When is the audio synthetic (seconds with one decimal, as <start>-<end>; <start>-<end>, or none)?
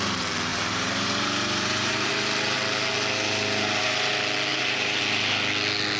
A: 0.5-2.1; 4.5-5.0